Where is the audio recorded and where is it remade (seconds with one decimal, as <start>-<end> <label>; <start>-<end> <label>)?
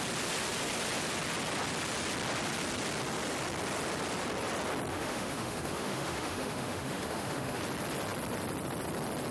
0.0-4.9 recorded; 4.9-7.6 remade; 7.6-9.3 recorded